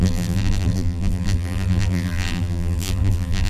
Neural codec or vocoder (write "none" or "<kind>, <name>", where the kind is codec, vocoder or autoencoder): vocoder, BigVGAN v2